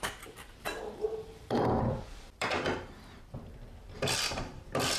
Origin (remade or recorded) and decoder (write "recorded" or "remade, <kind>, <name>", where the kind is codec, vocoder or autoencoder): remade, vocoder, BigVGAN v2